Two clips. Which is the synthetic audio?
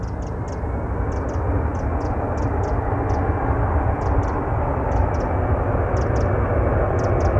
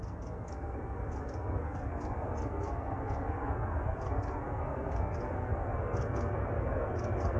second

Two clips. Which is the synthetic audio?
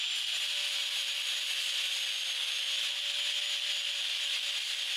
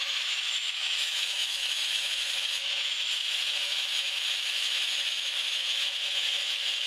second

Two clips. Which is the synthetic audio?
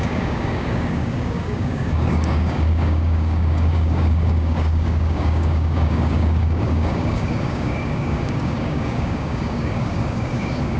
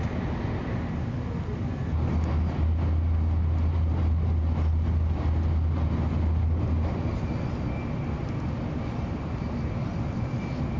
first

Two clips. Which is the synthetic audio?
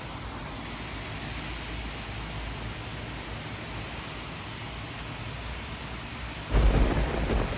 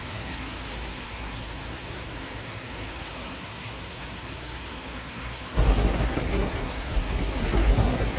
second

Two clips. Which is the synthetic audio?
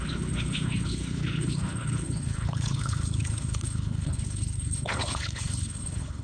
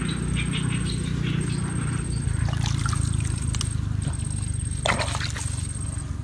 first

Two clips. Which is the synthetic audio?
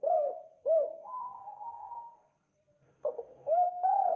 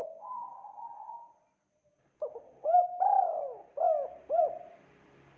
first